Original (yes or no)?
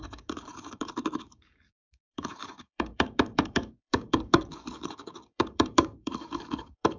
no